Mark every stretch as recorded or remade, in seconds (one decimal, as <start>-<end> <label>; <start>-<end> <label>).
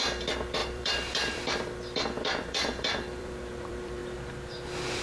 0.0-4.0 remade; 4.0-5.0 recorded